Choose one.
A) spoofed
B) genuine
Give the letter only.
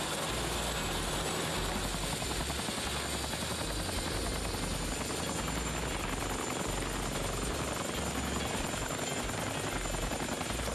B